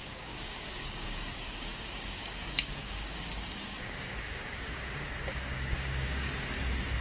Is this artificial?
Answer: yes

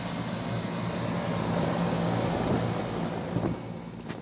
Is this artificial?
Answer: no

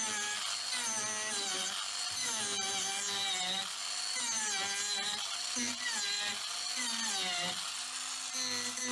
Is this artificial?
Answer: no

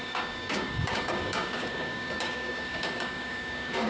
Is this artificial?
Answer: yes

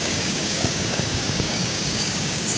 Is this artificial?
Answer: yes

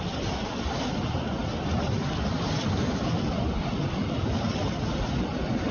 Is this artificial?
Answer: no